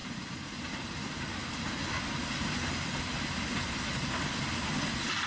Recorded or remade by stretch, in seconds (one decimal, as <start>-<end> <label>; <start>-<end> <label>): 0.0-1.6 remade; 1.6-5.3 recorded